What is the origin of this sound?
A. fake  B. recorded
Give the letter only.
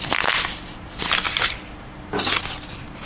B